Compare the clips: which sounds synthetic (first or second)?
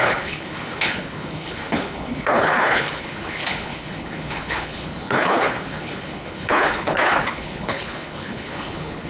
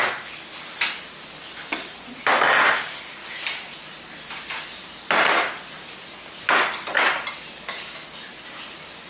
first